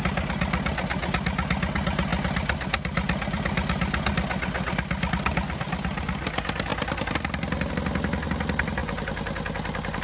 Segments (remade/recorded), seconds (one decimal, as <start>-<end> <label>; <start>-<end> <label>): 0.0-10.0 recorded